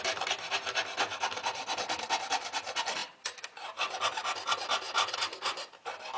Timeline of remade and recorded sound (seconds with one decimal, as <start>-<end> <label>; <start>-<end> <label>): 0.0-6.2 recorded